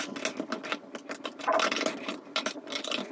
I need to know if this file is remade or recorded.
recorded